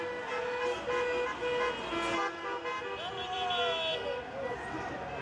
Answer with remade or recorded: recorded